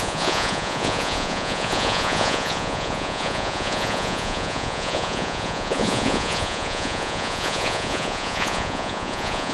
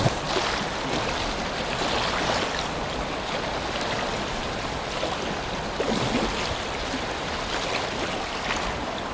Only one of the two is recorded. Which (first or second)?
second